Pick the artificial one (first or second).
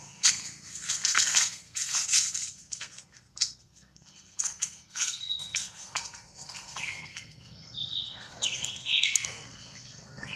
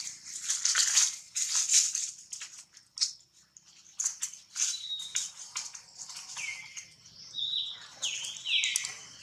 first